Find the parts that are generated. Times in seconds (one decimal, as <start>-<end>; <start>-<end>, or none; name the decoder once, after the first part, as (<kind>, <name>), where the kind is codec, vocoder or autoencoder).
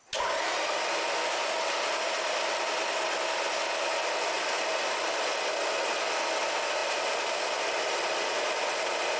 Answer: none